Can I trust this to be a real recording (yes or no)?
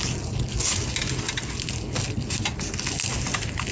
yes